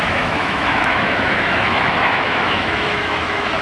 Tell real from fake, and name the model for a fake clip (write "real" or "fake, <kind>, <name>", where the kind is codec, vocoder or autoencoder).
fake, autoencoder, DAC-VAE